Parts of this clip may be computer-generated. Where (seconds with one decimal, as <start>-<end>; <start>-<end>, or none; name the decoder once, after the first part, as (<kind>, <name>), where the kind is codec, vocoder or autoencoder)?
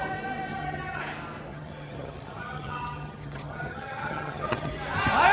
0.5-1.0 (vocoder, HiFi-GAN); 1.5-4.7